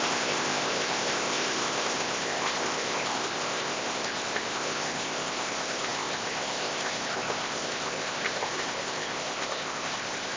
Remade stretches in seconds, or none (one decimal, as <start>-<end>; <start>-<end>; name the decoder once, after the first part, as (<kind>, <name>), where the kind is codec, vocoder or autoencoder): 0.0-10.4 (codec, ZipCodec)